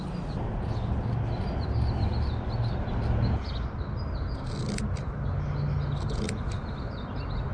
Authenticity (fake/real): real